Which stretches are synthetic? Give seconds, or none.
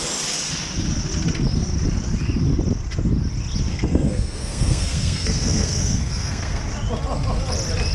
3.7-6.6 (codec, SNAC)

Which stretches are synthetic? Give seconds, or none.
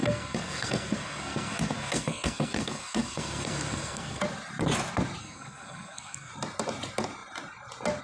0.0-4.2 (codec, SNAC); 5.2-6.3